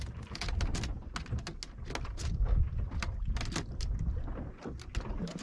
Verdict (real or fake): real